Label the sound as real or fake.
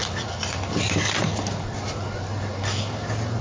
real